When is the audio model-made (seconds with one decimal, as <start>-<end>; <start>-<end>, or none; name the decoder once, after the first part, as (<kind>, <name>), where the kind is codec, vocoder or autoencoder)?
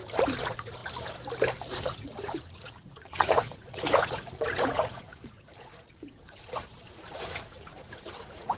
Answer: 0.0-0.8 (vocoder, Vocos); 1.7-8.6